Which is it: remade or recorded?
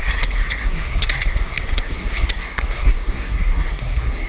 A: remade